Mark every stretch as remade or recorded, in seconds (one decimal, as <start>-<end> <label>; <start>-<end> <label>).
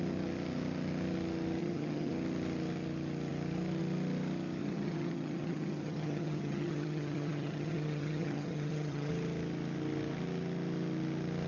0.0-1.6 recorded; 1.6-2.1 remade; 2.1-4.6 recorded; 4.6-9.1 remade; 9.1-11.5 recorded